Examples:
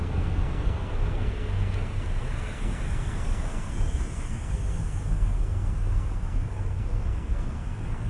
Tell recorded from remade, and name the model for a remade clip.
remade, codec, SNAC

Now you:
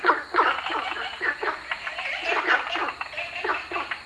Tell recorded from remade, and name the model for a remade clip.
recorded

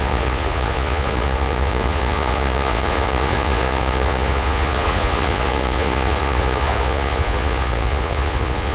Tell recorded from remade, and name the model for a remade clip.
remade, vocoder, Vocos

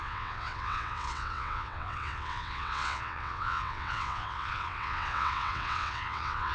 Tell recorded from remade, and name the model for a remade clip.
remade, vocoder, WaveNeXt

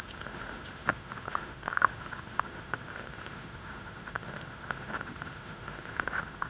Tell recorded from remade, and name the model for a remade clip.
remade, autoencoder, DAC-VAE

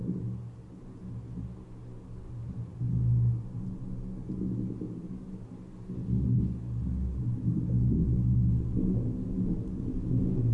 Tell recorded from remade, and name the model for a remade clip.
recorded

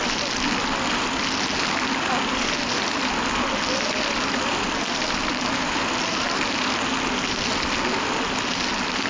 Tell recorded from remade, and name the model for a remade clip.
recorded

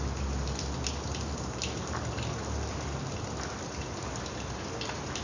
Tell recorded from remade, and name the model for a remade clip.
recorded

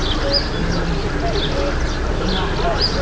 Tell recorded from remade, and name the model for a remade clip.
recorded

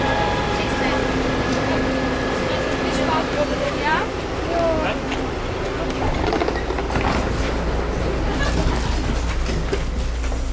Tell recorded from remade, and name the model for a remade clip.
recorded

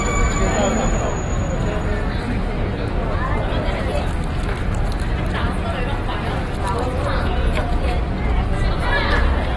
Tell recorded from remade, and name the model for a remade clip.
recorded